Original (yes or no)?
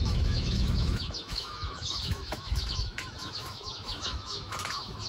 no